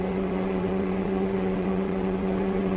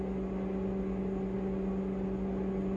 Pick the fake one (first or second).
first